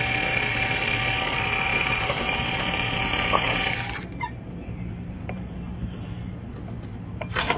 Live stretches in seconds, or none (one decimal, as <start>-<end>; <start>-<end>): 0.0-1.7; 6.3-7.6